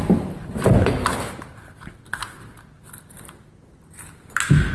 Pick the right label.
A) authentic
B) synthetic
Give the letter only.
A